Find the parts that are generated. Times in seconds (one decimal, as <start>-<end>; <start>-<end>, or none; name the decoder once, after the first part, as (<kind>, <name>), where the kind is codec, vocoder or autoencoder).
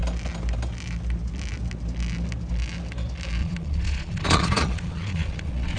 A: 3.4-5.8 (vocoder, Vocos)